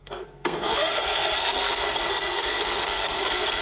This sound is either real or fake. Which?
fake